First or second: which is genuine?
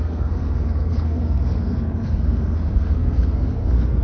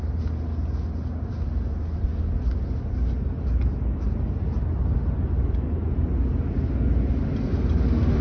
second